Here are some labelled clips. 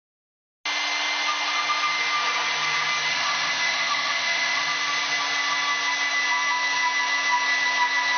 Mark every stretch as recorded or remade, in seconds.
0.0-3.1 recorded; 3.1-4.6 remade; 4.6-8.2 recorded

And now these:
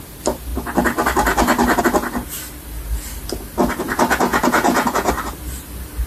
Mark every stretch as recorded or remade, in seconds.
0.0-4.3 recorded; 4.3-5.1 remade; 5.1-6.1 recorded

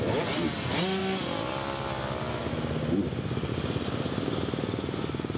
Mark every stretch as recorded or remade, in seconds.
0.0-5.4 recorded

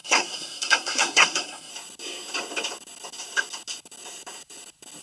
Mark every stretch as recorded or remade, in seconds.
0.0-1.7 remade; 1.7-5.0 recorded

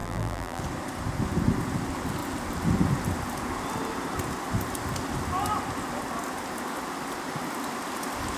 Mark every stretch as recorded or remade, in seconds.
0.0-0.6 remade; 0.6-8.4 recorded

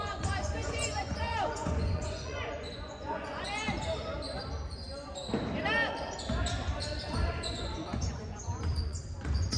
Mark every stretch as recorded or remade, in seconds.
0.0-3.6 remade; 3.6-7.3 recorded; 7.3-9.6 remade

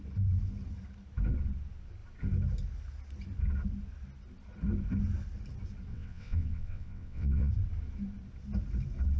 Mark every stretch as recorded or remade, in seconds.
0.0-5.9 recorded; 5.9-7.5 remade; 7.5-9.2 recorded

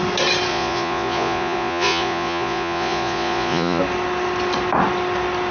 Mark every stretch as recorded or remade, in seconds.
0.0-0.5 recorded; 0.5-3.8 remade; 3.8-5.5 recorded